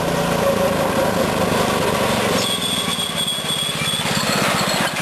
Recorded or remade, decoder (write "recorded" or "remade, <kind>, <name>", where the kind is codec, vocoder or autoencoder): recorded